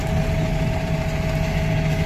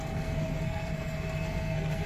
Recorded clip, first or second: first